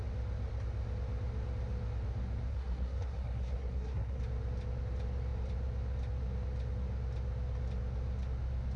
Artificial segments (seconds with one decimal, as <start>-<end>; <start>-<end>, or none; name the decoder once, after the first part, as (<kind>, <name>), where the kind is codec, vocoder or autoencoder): 2.5-4.2 (codec, SNAC)